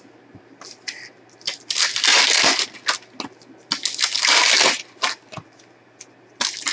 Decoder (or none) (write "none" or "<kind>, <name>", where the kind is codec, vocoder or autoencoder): none